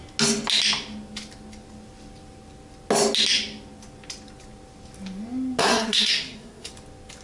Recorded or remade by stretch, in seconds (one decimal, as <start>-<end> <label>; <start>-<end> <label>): 0.0-5.6 recorded; 5.6-6.7 remade; 6.7-7.2 recorded